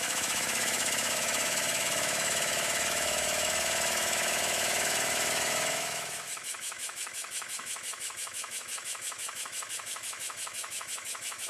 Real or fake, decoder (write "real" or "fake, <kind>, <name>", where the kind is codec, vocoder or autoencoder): fake, autoencoder, DAC-VAE